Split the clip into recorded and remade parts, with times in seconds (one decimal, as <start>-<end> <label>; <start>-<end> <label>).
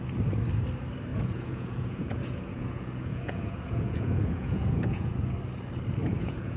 0.0-1.1 recorded; 1.1-5.1 remade; 5.1-6.0 recorded; 6.0-6.6 remade